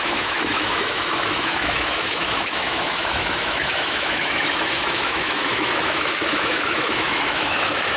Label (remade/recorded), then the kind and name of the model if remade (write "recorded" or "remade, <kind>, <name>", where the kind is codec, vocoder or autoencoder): remade, autoencoder, DAC-VAE